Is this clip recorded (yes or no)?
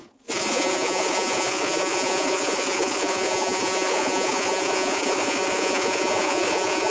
no